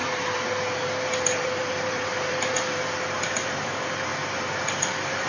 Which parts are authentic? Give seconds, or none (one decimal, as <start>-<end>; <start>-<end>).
none